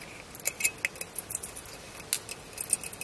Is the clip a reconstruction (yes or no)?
no